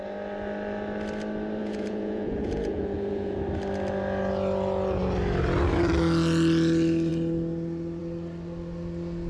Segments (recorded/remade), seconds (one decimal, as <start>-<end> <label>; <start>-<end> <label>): 0.0-1.6 recorded; 1.6-3.4 remade; 3.4-9.3 recorded